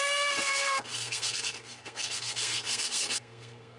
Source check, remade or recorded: remade